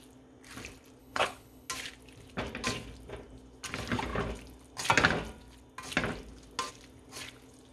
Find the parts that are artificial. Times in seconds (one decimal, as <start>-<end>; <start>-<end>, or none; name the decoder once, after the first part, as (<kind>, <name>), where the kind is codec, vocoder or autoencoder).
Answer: 1.0-1.7 (codec, HILCodec)